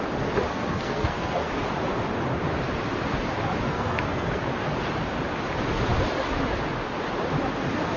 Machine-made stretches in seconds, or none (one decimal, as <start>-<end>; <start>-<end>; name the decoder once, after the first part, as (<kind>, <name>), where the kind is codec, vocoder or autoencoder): 0.5-1.5 (codec, SNAC); 3.7-4.4